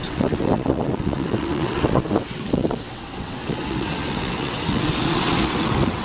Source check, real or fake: fake